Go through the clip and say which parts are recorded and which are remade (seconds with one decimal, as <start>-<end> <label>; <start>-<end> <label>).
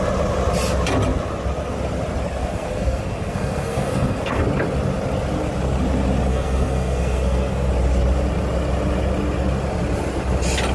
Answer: 0.0-2.4 recorded; 2.4-4.4 remade; 4.4-6.3 recorded; 6.3-7.7 remade; 7.7-10.7 recorded